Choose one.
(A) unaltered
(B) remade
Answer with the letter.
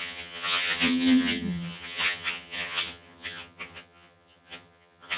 B